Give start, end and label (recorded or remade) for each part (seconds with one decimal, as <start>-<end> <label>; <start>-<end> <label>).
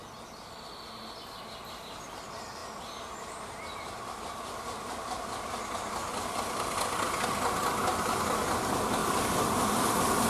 0.0-10.3 recorded